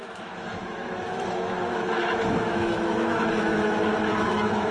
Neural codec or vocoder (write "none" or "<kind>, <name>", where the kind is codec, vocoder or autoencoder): autoencoder, DAC-VAE